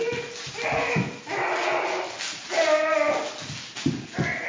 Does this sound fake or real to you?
real